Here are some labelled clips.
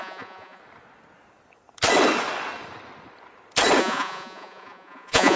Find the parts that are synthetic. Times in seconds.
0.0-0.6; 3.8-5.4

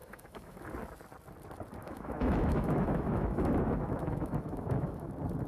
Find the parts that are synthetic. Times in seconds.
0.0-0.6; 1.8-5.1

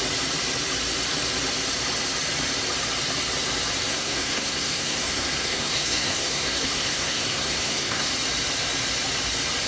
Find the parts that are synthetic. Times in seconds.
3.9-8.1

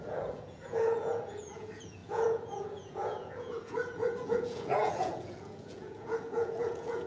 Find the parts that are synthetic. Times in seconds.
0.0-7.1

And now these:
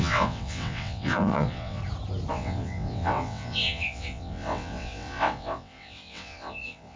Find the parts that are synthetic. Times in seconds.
0.0-1.8; 2.3-7.0

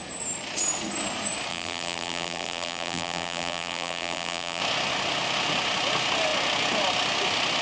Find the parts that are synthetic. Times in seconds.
1.5-4.6